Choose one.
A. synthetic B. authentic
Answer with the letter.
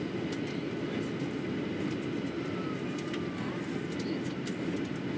B